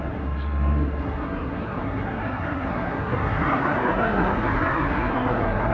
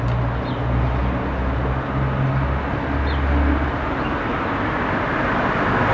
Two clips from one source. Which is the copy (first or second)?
first